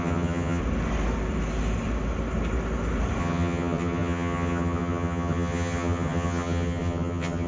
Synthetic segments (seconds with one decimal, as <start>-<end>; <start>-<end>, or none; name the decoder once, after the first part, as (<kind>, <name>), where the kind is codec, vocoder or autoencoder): 0.0-0.6 (vocoder, HiFi-GAN); 3.2-7.5